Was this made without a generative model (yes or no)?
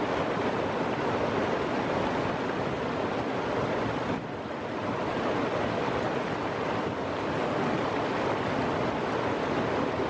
yes